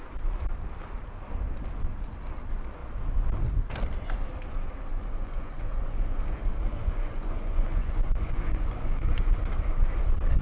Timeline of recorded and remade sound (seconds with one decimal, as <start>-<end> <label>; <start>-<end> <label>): 0.0-4.9 recorded; 4.9-6.2 remade; 6.2-6.7 recorded; 6.7-9.4 remade; 9.4-10.4 recorded